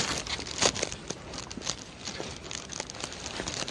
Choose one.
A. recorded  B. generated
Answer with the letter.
A